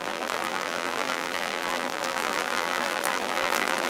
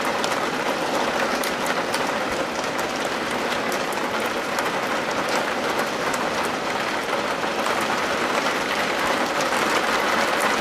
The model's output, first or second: first